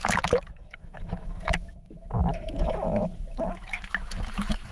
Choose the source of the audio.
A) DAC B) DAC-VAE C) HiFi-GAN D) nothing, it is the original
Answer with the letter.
B